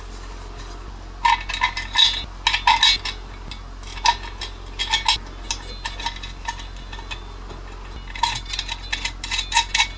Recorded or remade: recorded